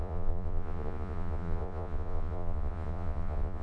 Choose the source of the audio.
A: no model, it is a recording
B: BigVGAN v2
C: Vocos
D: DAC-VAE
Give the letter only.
C